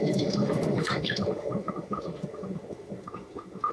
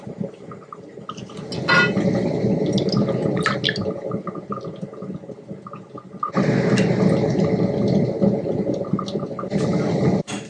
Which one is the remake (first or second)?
first